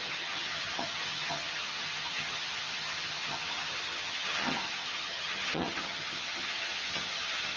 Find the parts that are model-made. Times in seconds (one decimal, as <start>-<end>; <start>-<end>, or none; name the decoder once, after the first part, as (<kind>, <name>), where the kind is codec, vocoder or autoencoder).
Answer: 0.0-7.6 (vocoder, HiFi-GAN)